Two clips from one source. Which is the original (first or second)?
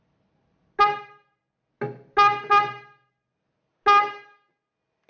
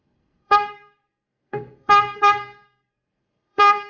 first